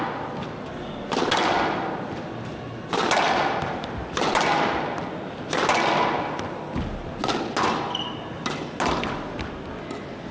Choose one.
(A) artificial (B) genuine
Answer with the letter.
B